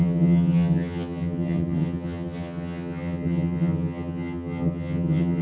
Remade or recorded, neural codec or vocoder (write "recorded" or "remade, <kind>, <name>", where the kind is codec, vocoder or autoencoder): remade, vocoder, HiFi-GAN